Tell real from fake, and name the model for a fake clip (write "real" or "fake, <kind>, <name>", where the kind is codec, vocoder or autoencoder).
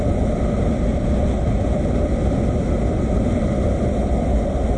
real